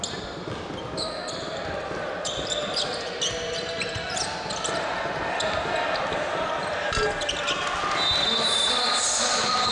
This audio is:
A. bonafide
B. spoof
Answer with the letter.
A